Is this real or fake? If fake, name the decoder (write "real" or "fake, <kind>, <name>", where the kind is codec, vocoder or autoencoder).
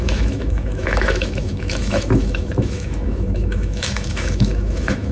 fake, autoencoder, DAC-VAE